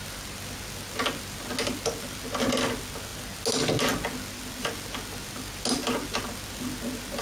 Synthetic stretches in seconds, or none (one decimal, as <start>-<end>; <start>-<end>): none